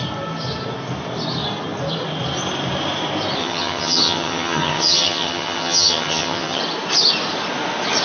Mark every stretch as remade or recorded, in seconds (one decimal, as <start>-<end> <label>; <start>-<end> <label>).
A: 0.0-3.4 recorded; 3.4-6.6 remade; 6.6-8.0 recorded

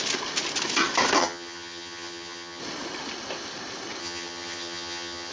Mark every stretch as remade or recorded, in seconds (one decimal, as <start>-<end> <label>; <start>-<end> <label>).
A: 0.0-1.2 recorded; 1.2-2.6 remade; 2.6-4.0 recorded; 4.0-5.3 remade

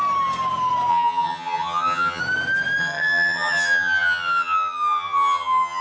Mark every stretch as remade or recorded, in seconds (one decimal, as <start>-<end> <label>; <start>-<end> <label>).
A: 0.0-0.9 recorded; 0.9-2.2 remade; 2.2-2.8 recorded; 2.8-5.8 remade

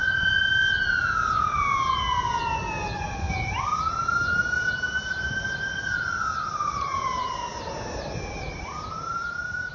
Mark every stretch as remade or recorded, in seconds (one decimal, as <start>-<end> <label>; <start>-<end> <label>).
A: 0.0-9.7 recorded

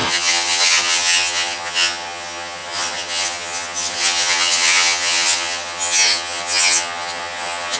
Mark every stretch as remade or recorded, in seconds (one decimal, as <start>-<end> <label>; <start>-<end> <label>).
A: 0.0-7.8 remade

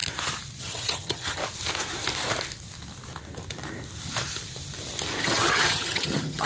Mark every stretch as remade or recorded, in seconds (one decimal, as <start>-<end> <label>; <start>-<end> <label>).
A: 0.0-0.6 recorded; 0.6-1.4 remade; 1.4-5.2 recorded; 5.2-6.5 remade

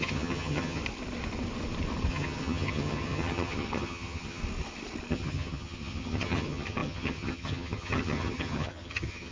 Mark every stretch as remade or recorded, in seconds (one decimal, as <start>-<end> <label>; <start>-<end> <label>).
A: 0.0-0.8 remade; 0.8-2.1 recorded; 2.1-4.4 remade; 4.4-5.1 recorded; 5.1-9.3 remade